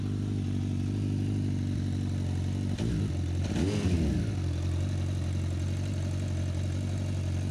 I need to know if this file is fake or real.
real